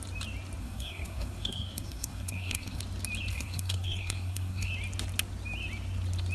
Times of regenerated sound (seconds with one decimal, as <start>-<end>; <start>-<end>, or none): 0.6-2.8; 3.3-4.7